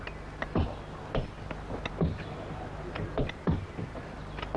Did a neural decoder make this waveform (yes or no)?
no